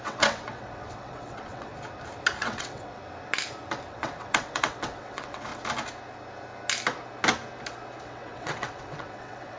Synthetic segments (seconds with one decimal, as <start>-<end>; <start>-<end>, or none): 0.0-1.7; 2.4-3.0; 3.9-5.5; 8.0-9.6